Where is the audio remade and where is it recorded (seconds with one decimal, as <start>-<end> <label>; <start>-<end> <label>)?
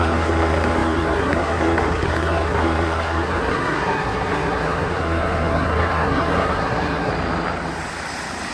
0.0-7.1 remade; 7.1-8.5 recorded